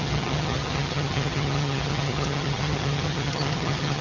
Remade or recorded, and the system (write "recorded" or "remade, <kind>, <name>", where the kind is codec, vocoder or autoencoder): remade, vocoder, HiFi-GAN